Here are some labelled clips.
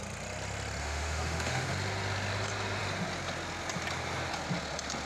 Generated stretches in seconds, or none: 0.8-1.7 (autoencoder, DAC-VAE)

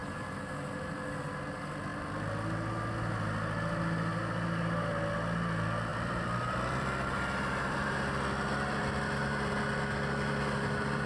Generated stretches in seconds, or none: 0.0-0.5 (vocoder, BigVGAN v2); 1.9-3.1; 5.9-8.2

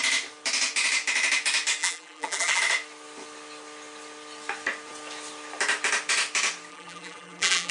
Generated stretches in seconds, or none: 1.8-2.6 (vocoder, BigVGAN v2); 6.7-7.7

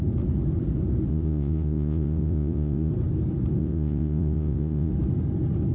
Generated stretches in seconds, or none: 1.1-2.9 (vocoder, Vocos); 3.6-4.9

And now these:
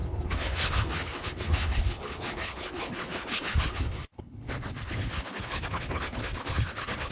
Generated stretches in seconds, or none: 0.0-7.1 (codec, HILCodec)

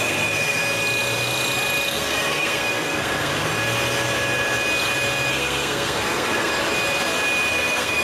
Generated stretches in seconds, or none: 0.0-0.6 (codec, SNAC); 1.9-3.3; 5.3-6.5; 7.5-8.0

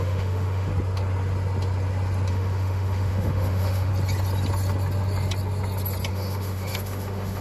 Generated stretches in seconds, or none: 0.0-0.7 (autoencoder, DAC-VAE); 2.3-3.9; 6.1-7.4